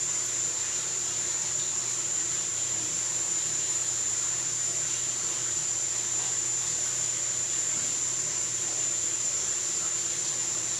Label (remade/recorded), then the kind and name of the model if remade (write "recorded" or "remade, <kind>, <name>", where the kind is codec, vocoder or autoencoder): remade, vocoder, BigVGAN v2